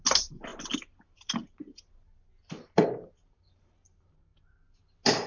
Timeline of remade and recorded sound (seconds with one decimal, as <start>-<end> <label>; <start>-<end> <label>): 0.0-5.3 recorded